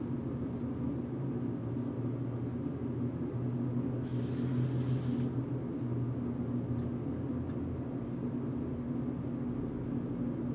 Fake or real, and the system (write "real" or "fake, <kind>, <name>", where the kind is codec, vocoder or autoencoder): real